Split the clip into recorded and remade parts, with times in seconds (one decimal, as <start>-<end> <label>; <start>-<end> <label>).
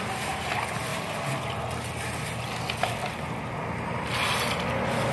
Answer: 0.0-5.1 recorded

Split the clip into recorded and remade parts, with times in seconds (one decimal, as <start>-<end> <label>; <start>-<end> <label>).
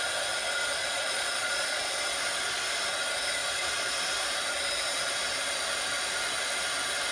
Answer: 0.0-0.8 recorded; 0.8-2.0 remade; 2.0-3.4 recorded; 3.4-3.9 remade; 3.9-7.1 recorded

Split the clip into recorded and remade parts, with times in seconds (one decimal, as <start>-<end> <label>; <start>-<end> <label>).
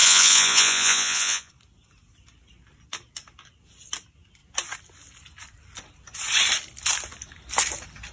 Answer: 0.0-1.5 remade; 1.5-8.1 recorded